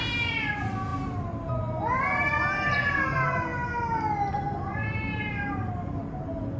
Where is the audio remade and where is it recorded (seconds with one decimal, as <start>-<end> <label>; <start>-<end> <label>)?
0.0-3.5 remade; 3.5-4.3 recorded; 4.3-6.6 remade